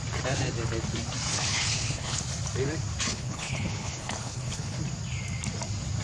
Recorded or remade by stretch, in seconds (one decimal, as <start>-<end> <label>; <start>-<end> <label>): 0.0-1.3 recorded; 1.3-2.2 remade; 2.2-3.1 recorded; 3.1-4.8 remade; 4.8-6.0 recorded

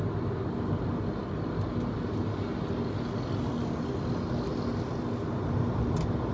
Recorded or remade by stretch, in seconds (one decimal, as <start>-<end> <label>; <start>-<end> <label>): 0.0-6.3 recorded

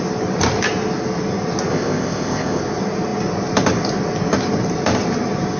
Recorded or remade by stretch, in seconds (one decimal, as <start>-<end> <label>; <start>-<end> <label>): 0.0-1.7 recorded; 1.7-2.6 remade; 2.6-5.6 recorded

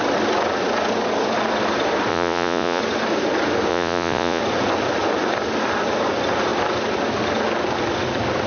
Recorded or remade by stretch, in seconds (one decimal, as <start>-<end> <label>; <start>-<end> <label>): 0.0-2.1 recorded; 2.1-2.8 remade; 2.8-3.7 recorded; 3.7-4.4 remade; 4.4-8.5 recorded

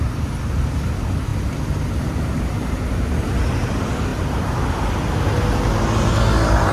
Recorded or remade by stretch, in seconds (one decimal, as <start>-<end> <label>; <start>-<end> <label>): 0.0-6.7 recorded

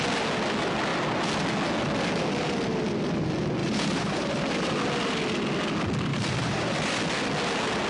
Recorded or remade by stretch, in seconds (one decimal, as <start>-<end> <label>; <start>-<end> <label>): 0.0-3.6 recorded; 3.6-4.5 remade; 4.5-6.1 recorded; 6.1-6.8 remade; 6.8-7.9 recorded

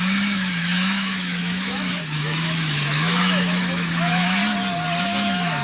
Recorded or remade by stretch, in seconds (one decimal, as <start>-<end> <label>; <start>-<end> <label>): 0.0-4.4 remade; 4.4-5.0 recorded; 5.0-5.6 remade

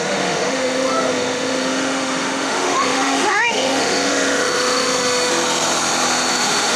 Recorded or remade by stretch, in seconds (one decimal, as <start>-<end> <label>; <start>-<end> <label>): 0.0-5.3 remade; 5.3-6.3 recorded; 6.3-6.8 remade